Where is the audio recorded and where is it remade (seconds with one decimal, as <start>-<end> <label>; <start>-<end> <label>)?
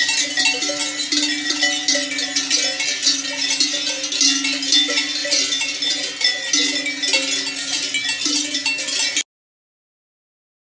0.0-10.6 recorded